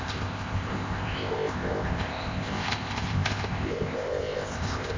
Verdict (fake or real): fake